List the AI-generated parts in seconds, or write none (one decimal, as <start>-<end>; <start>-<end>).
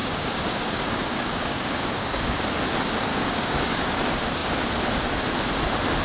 0.0-2.4; 3.1-4.0